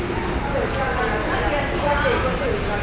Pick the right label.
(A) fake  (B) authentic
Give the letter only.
B